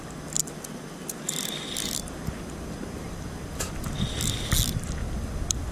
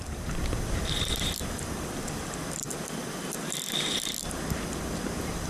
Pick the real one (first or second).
first